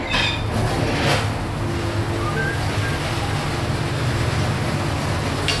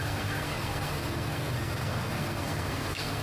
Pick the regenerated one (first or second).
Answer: second